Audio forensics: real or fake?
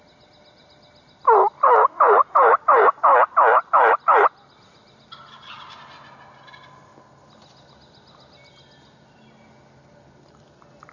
real